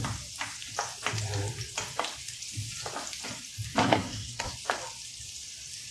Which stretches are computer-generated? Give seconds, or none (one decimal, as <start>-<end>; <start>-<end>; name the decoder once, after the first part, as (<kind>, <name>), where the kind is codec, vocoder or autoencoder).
3.8-4.5 (codec, SNAC)